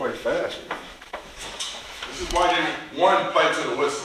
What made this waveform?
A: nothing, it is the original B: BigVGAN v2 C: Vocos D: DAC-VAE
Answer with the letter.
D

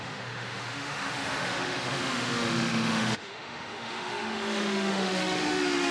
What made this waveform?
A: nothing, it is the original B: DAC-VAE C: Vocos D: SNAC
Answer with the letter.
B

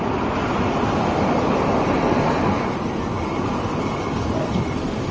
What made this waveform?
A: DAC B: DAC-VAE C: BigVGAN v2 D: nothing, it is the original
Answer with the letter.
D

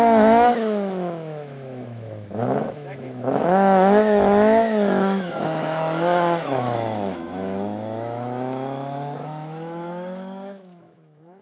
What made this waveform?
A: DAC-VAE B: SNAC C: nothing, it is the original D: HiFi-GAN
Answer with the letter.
A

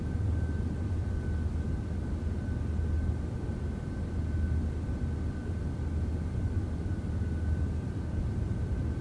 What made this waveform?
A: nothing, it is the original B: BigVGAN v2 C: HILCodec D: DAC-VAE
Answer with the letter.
A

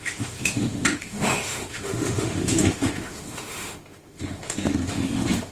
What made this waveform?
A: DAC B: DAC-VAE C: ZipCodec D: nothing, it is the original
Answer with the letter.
B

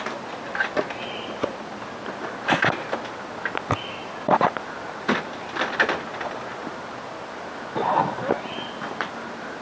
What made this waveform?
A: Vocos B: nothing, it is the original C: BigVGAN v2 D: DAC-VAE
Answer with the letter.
B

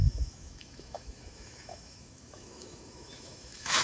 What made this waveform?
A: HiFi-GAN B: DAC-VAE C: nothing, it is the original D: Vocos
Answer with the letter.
B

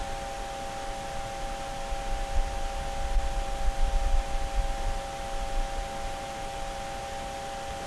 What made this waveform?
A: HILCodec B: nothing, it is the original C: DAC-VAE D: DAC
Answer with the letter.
B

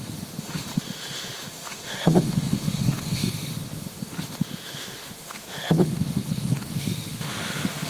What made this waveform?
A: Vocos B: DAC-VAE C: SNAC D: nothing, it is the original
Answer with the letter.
B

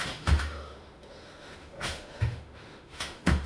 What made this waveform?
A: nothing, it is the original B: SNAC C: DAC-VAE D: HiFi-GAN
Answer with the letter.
C